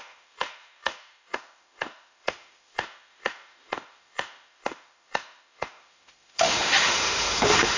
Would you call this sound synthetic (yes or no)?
yes